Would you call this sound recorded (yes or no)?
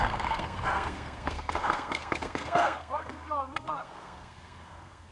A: no